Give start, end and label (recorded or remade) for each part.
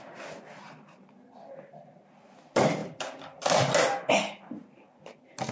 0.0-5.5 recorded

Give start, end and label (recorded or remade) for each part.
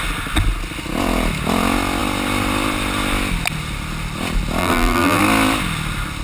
0.0-4.6 recorded; 4.6-5.2 remade; 5.2-6.2 recorded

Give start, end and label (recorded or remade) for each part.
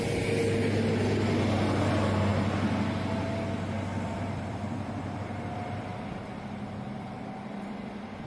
0.0-3.9 recorded; 3.9-5.5 remade; 5.5-8.3 recorded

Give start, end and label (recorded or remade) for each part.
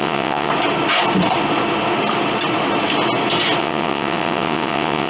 0.0-0.5 remade; 0.5-3.6 recorded; 3.6-5.1 remade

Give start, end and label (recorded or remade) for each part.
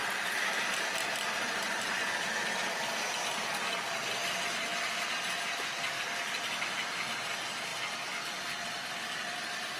0.0-3.6 remade; 3.6-9.8 recorded